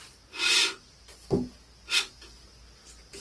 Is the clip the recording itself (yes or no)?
yes